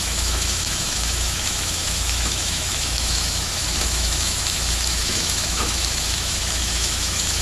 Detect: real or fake fake